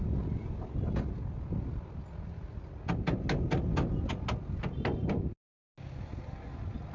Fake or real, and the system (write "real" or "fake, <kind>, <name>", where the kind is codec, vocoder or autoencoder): real